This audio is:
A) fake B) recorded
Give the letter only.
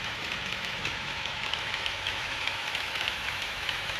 A